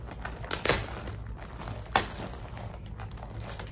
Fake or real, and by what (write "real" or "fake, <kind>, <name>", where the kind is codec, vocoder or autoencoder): real